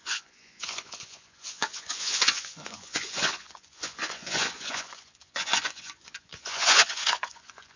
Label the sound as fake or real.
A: fake